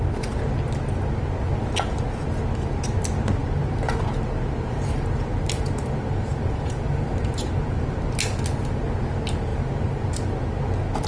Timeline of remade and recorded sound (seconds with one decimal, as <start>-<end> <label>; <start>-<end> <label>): 0.0-5.3 recorded; 5.3-8.1 remade; 8.1-9.5 recorded; 9.5-10.1 remade; 10.1-11.1 recorded